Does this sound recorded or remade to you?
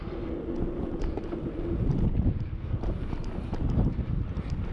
recorded